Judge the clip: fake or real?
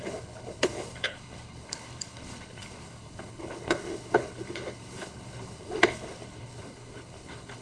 fake